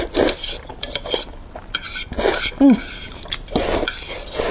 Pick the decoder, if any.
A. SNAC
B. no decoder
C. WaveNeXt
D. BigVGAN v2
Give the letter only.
B